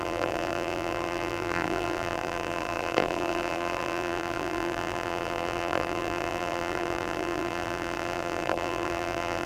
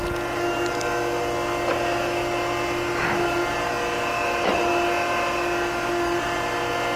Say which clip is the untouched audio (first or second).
second